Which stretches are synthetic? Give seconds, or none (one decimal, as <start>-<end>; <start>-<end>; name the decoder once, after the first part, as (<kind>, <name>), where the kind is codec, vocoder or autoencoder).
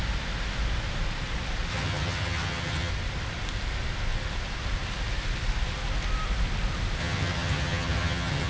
1.7-2.9 (vocoder, HiFi-GAN); 7.0-8.5